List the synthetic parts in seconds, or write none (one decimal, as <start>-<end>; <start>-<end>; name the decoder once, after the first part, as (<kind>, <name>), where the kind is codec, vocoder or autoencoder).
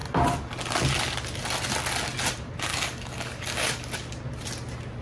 2.7-3.9 (codec, DAC)